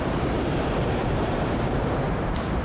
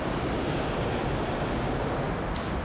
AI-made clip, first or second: first